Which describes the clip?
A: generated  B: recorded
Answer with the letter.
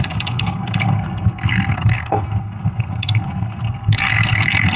A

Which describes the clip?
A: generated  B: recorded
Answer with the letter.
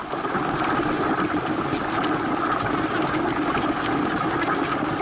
B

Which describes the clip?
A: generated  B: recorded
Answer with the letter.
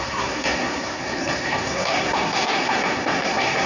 A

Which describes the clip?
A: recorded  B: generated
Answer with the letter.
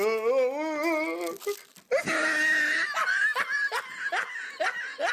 A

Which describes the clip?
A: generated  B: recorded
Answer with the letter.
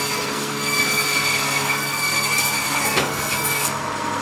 A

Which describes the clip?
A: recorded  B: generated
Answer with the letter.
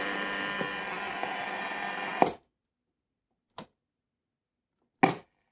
A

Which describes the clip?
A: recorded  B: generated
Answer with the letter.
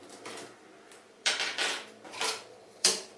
B